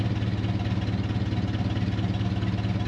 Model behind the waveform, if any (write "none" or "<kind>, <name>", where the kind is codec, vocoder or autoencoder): none